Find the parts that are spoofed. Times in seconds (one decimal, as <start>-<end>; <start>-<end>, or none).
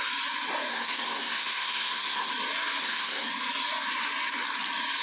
0.7-2.3; 2.8-3.3